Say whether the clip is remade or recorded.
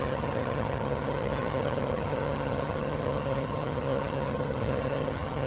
remade